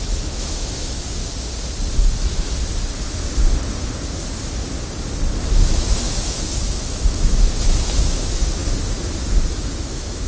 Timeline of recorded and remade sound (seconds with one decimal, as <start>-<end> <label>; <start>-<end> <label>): 0.0-1.2 remade; 1.2-5.5 recorded; 5.5-8.6 remade; 8.6-9.6 recorded; 9.6-10.3 remade